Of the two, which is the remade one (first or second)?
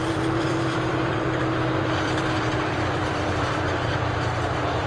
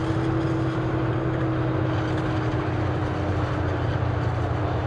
first